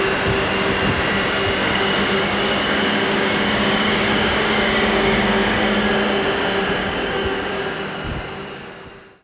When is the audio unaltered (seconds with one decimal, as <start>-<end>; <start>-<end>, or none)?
0.0-1.6; 5.9-6.8; 7.6-9.2